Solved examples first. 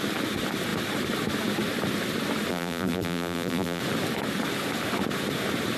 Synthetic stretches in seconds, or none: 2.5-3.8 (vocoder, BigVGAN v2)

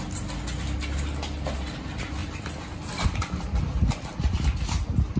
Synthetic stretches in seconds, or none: 2.2-3.6 (vocoder, BigVGAN v2)

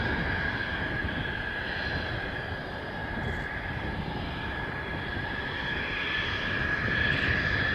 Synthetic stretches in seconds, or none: 3.0-4.2 (vocoder, BigVGAN v2)

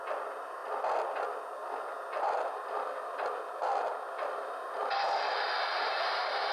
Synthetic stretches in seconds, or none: none

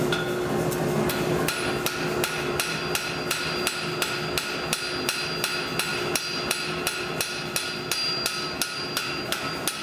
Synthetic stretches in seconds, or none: none

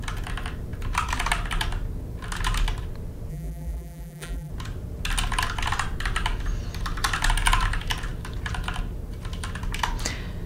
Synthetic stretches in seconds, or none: 3.3-4.5 (vocoder, BigVGAN v2)

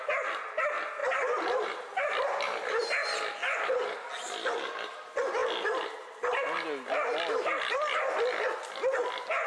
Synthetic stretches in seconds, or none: none

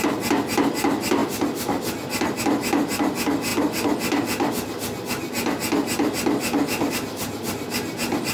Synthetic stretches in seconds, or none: none